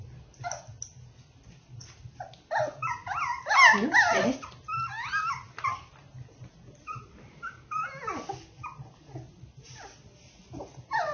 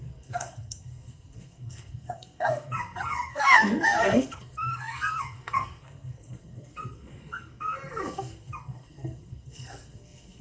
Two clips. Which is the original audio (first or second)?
first